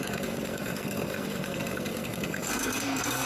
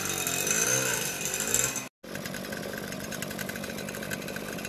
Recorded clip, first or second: second